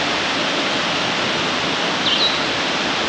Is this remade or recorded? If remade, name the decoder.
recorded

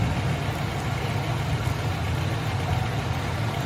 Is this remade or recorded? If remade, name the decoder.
recorded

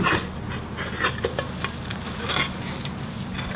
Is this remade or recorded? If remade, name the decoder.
recorded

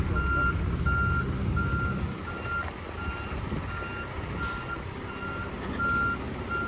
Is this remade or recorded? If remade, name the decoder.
recorded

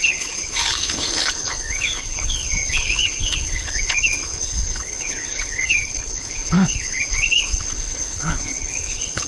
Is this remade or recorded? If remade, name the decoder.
remade, codec, HILCodec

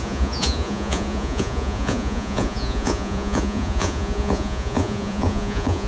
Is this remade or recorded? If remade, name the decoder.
remade, vocoder, Vocos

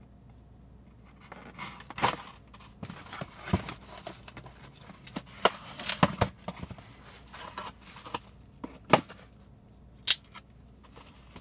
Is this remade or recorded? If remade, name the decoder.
recorded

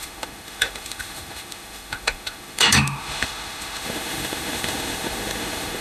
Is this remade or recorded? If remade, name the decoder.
remade, autoencoder, DAC-VAE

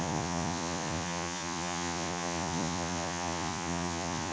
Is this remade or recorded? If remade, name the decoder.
remade, vocoder, Vocos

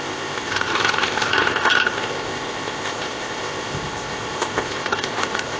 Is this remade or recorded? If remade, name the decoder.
remade, codec, ZipCodec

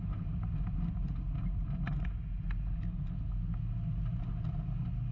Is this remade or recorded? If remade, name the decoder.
recorded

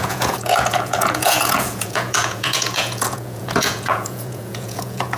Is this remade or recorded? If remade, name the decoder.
remade, vocoder, Vocos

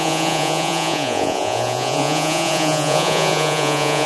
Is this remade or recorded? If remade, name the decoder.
remade, vocoder, Vocos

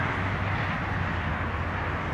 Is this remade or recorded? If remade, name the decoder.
recorded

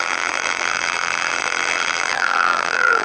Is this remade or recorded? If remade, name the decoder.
remade, vocoder, BigVGAN v2